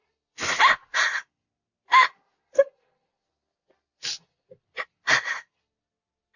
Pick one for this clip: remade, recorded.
recorded